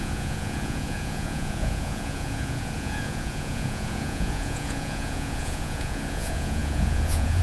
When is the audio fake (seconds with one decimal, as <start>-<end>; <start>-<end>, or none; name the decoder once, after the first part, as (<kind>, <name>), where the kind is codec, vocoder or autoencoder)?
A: 0.0-7.4 (vocoder, Vocos)